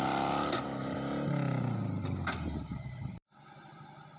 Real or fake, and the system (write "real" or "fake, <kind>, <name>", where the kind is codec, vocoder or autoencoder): real